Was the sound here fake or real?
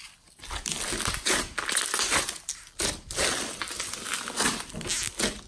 real